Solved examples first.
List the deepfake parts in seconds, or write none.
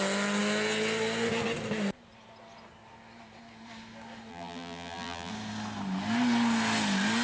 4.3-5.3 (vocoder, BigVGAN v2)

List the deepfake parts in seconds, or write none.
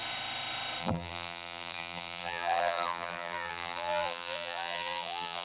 0.8-5.4 (vocoder, BigVGAN v2)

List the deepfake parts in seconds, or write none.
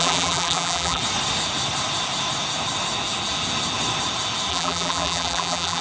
0.0-1.0 (vocoder, BigVGAN v2); 4.5-5.8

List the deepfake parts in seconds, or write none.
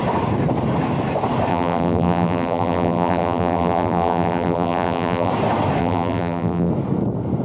1.5-5.3 (vocoder, BigVGAN v2); 5.8-6.7